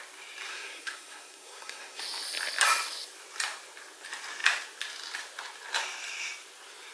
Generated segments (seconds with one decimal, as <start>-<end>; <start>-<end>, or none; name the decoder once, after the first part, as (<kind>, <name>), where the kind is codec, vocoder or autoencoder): 0.5-2.0 (codec, SNAC)